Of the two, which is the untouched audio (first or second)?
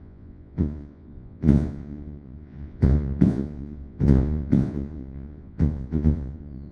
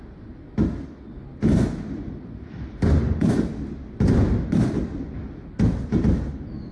second